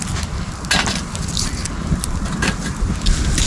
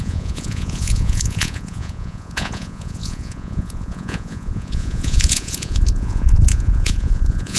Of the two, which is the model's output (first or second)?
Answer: second